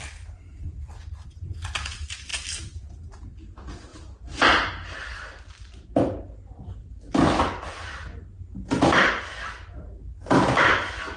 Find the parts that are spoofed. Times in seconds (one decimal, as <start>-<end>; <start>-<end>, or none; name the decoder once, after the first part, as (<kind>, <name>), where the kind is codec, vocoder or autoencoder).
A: none